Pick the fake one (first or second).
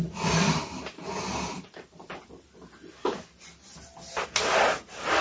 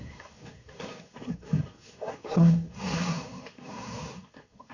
second